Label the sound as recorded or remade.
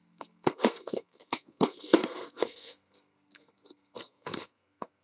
remade